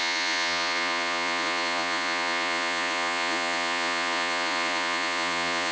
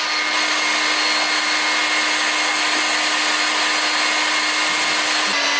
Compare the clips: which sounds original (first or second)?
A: second